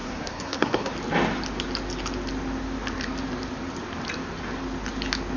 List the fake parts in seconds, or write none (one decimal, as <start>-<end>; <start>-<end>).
0.0-0.9